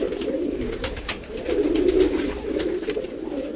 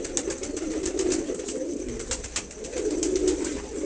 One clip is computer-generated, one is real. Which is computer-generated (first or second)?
first